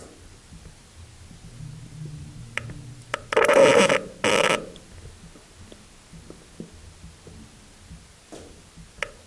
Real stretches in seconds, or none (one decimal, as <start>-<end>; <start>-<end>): 0.0-9.3